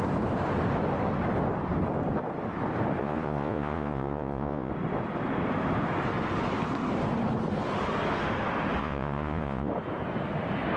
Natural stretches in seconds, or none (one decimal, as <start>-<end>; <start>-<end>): 0.0-3.0; 4.7-8.8; 9.7-10.8